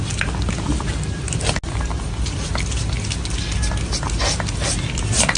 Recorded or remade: recorded